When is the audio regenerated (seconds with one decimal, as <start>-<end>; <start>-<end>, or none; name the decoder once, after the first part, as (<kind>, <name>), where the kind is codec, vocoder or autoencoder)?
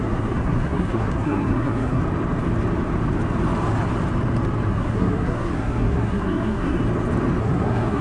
0.0-2.0 (codec, SNAC); 4.7-6.8; 7.4-8.0